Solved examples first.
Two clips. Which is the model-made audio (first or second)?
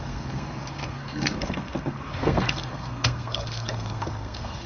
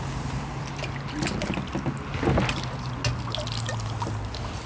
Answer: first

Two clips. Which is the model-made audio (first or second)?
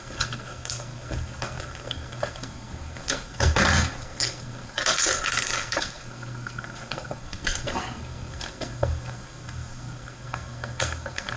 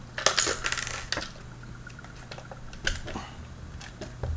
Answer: first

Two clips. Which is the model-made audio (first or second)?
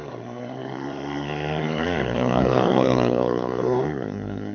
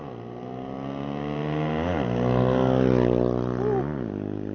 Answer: first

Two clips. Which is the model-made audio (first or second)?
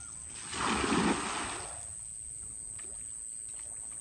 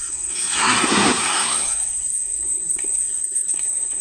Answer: second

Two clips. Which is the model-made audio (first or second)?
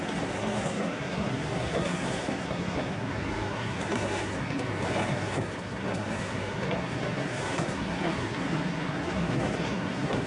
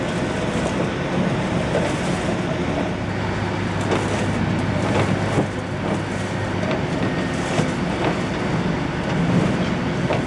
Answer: first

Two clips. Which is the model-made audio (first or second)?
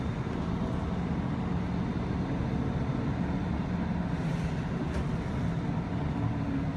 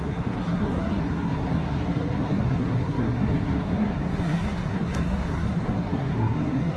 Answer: second